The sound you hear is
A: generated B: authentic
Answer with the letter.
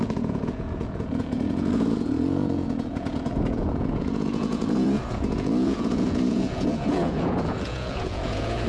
A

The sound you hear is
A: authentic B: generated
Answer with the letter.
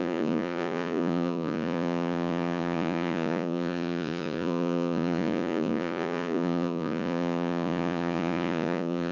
B